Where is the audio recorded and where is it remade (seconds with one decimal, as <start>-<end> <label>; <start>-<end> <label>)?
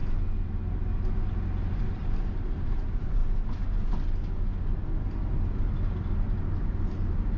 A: 0.0-1.9 recorded; 1.9-3.2 remade; 3.2-6.4 recorded; 6.4-7.4 remade